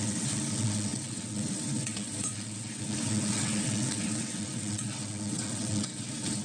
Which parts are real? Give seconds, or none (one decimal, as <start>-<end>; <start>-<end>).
none